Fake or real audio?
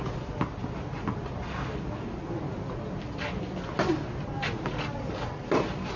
real